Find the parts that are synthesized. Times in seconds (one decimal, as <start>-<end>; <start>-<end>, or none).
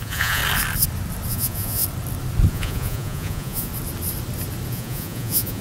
0.0-0.4; 1.3-1.8; 2.5-3.7; 4.7-5.6